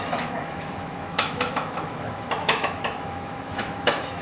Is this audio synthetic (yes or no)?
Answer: yes